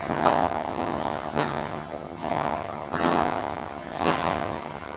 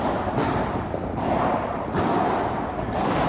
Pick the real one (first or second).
second